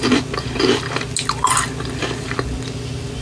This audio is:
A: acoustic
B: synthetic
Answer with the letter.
A